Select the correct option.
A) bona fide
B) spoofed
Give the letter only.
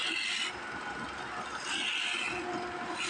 A